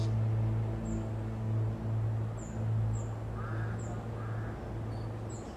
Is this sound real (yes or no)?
yes